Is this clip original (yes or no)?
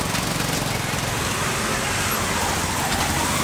yes